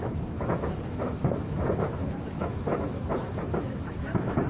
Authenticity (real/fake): fake